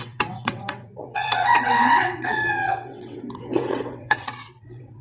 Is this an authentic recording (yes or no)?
no